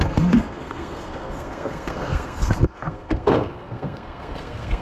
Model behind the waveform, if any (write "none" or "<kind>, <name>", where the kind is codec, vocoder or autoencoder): codec, SNAC